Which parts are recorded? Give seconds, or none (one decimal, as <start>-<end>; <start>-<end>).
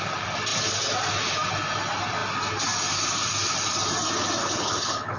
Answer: 0.0-4.4